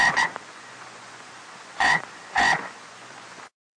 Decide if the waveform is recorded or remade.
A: remade